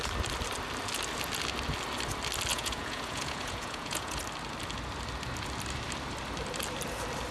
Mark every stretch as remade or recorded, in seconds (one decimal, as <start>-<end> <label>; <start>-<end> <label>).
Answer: 0.0-2.5 recorded; 2.5-4.2 remade; 4.2-7.3 recorded